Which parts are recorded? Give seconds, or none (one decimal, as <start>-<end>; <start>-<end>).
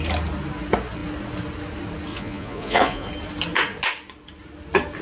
0.0-2.1; 3.1-5.0